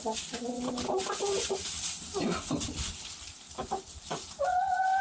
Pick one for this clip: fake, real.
real